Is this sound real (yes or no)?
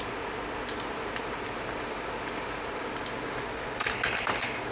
yes